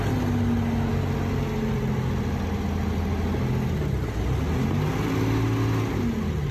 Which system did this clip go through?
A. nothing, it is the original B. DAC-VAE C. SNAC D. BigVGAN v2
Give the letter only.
A